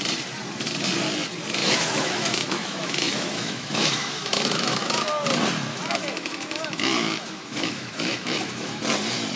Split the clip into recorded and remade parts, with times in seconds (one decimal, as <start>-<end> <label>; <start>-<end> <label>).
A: 0.0-1.6 recorded; 1.6-5.0 remade; 5.0-5.7 recorded; 5.7-8.8 remade; 8.8-9.4 recorded